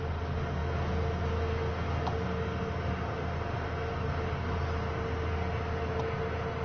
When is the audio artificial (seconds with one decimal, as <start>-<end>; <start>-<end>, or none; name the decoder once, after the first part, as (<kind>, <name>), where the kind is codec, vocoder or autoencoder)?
none